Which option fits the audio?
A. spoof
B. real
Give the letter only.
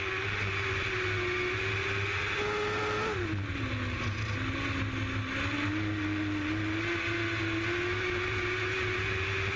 B